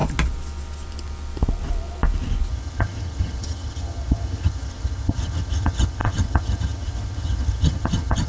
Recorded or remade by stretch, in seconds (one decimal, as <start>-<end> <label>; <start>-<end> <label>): 0.0-2.5 recorded; 2.5-8.3 remade